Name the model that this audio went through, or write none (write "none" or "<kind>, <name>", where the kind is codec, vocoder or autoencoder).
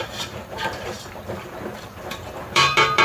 vocoder, BigVGAN v2